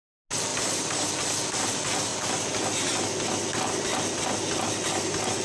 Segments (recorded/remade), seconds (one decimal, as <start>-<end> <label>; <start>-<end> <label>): 0.0-0.5 recorded; 0.5-1.1 remade; 1.1-5.4 recorded